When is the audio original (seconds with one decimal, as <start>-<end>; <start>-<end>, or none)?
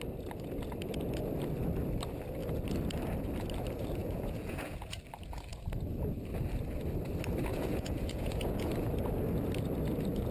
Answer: 0.0-4.0; 4.9-7.5; 8.7-10.3